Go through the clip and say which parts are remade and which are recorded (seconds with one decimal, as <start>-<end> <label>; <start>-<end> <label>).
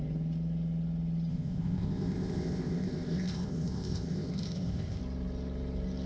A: 0.0-1.3 recorded; 1.3-5.0 remade; 5.0-6.1 recorded